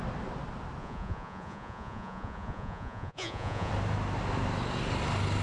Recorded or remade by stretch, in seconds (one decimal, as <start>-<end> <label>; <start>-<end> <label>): 0.0-0.8 recorded; 0.8-3.7 remade; 3.7-5.4 recorded